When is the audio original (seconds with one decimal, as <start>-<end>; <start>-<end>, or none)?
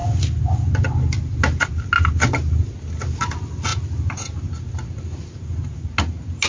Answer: 0.0-6.5